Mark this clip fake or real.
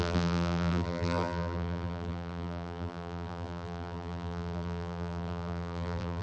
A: fake